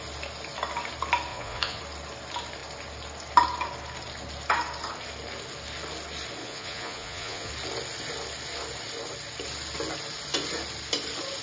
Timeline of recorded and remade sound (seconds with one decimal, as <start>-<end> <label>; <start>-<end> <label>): 0.0-1.3 recorded; 1.3-1.8 remade; 1.8-6.4 recorded; 6.4-7.5 remade; 7.5-11.4 recorded